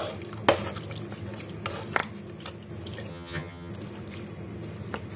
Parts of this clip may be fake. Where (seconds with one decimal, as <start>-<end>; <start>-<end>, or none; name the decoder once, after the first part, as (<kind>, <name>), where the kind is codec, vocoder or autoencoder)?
3.1-3.7 (vocoder, HiFi-GAN)